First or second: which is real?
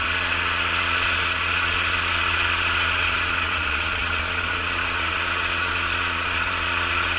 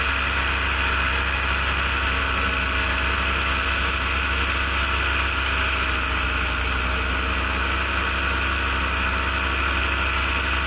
second